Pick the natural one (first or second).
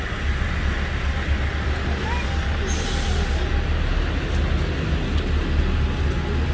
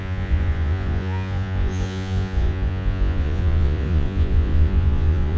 first